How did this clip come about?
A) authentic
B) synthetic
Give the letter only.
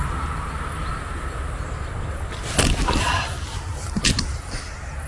A